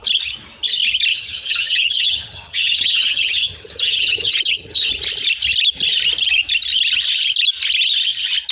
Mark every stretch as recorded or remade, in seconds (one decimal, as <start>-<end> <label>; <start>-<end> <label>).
0.0-1.1 recorded; 1.1-4.9 remade; 4.9-8.5 recorded